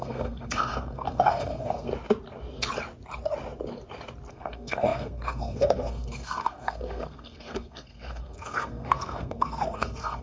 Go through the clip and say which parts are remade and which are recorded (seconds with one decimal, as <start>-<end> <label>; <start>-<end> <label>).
0.0-1.9 remade; 1.9-4.3 recorded; 4.3-10.2 remade